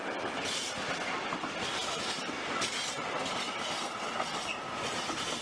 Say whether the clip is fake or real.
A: real